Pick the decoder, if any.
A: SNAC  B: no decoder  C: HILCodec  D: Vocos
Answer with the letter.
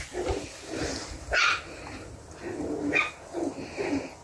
B